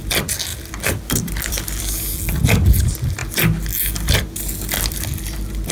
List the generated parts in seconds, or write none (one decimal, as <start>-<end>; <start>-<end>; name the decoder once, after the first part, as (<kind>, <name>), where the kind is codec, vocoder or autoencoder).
0.5-1.8 (vocoder, BigVGAN v2)